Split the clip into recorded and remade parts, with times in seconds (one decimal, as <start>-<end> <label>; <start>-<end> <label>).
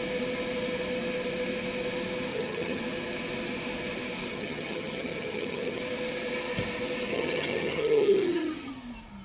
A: 0.0-2.3 recorded; 2.3-2.8 remade; 2.8-4.3 recorded; 4.3-5.8 remade; 5.8-7.1 recorded; 7.1-8.7 remade; 8.7-9.2 recorded